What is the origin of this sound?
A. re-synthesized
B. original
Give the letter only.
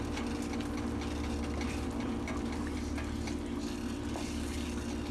B